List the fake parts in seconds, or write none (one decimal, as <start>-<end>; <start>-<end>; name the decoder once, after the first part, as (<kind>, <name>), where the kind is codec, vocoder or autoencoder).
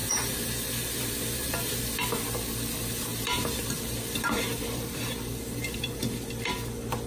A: 0.0-1.8 (vocoder, BigVGAN v2); 3.1-6.3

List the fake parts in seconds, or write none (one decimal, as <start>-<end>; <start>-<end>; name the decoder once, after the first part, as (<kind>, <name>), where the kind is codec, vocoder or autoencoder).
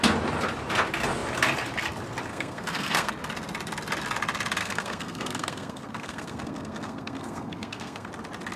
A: 2.3-3.1 (codec, SNAC); 4.6-8.1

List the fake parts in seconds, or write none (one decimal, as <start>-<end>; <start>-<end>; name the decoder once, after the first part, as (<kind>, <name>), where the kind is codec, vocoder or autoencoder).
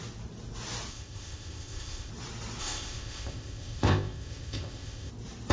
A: 0.9-2.1 (codec, ZipCodec); 2.6-5.1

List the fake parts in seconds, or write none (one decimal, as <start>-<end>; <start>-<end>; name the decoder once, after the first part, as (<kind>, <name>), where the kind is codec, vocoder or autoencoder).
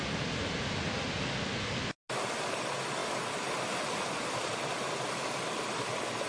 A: none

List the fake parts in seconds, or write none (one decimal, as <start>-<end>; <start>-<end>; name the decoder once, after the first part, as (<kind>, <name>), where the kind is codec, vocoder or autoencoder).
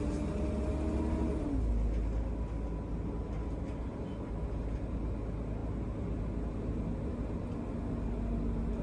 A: none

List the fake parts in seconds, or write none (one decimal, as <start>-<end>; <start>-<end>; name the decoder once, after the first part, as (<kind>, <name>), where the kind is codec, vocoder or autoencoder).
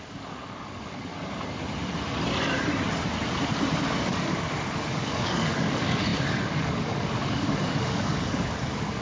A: 0.0-1.1 (codec, DAC); 3.8-9.0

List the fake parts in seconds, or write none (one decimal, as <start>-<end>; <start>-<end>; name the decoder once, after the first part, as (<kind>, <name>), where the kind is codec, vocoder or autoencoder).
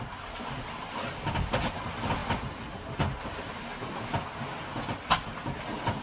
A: none